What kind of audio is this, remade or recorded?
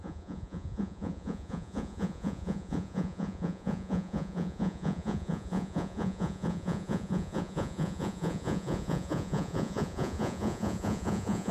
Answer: remade